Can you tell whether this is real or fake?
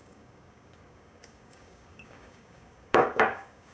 fake